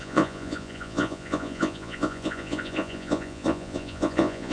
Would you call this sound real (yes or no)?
no